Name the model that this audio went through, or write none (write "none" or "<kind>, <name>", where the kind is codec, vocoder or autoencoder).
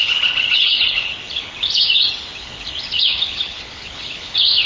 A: codec, HILCodec